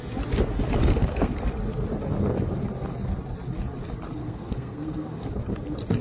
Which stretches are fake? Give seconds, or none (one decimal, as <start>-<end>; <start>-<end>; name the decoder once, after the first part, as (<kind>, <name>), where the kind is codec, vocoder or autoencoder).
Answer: 0.8-1.4 (codec, SNAC); 4.2-5.3